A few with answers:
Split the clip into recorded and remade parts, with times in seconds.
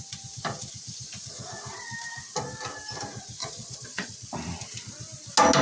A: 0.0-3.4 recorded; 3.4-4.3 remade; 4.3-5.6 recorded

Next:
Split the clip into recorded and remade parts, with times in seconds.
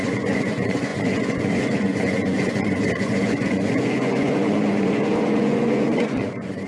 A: 0.0-6.7 remade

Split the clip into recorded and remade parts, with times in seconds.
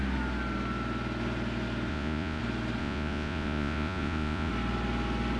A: 0.0-1.9 recorded; 1.9-2.4 remade; 2.4-2.8 recorded; 2.8-4.5 remade; 4.5-5.4 recorded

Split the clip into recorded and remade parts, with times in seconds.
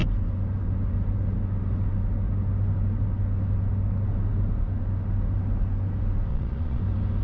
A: 0.0-6.3 recorded; 6.3-6.8 remade; 6.8-7.2 recorded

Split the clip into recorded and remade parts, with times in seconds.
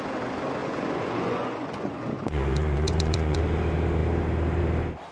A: 0.0-0.6 recorded; 0.6-3.4 remade; 3.4-5.1 recorded